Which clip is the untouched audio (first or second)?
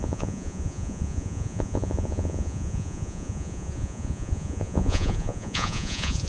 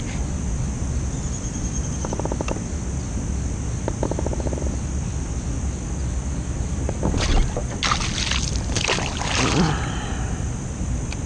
second